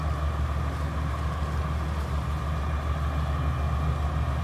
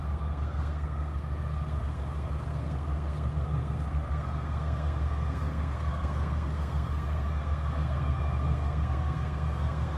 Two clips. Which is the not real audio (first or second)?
second